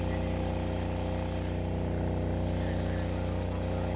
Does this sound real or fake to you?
real